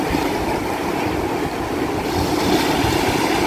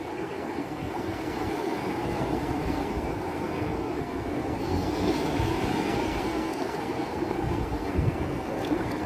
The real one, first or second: first